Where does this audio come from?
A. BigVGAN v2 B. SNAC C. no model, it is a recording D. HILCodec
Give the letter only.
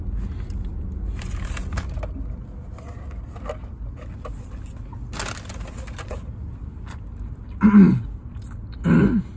C